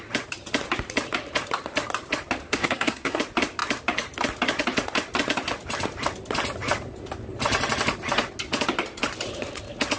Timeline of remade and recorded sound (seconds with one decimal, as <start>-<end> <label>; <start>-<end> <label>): 0.0-2.5 recorded; 2.5-3.2 remade; 3.2-10.0 recorded